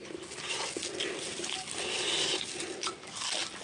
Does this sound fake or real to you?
real